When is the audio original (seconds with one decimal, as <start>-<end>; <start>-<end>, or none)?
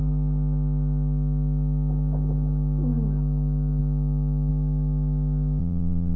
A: 0.0-5.6